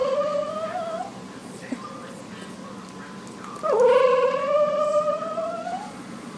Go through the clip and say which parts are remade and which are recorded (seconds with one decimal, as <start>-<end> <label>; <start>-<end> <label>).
0.0-0.5 remade; 0.5-1.4 recorded; 1.4-2.2 remade; 2.2-4.0 recorded; 4.0-6.4 remade